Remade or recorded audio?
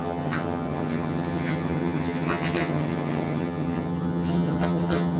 remade